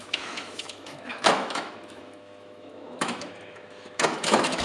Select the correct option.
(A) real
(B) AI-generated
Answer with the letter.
B